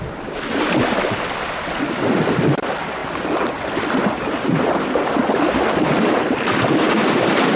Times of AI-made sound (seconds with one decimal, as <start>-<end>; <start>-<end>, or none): none